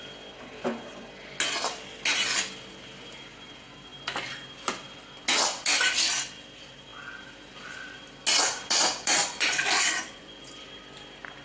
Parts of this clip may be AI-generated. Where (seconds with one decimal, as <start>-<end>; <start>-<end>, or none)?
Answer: 9.2-10.4